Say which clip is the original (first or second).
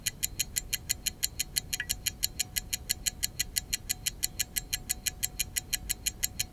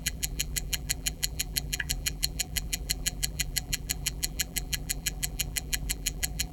first